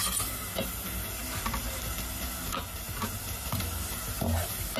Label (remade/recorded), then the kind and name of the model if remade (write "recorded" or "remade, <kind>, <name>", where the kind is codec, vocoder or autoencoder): recorded